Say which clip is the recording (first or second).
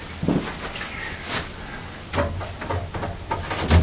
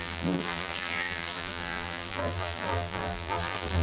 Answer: first